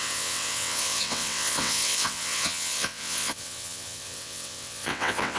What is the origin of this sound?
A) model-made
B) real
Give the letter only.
A